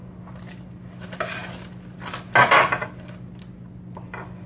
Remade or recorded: recorded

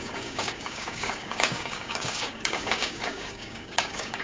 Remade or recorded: remade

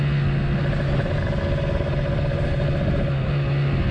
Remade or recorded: recorded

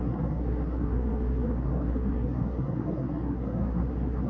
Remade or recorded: remade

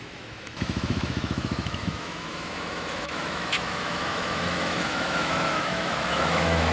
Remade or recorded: remade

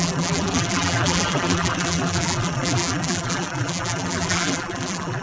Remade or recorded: remade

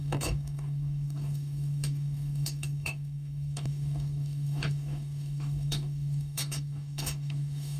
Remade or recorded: remade